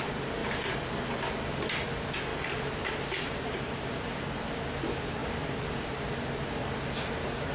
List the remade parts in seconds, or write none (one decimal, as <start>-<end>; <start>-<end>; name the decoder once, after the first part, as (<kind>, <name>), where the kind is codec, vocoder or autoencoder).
0.4-0.9 (vocoder, BigVGAN v2); 2.3-4.4; 5.2-5.9